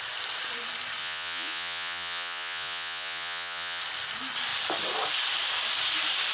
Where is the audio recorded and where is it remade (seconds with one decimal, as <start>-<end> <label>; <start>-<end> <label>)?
0.0-1.0 recorded; 1.0-3.8 remade; 3.8-6.3 recorded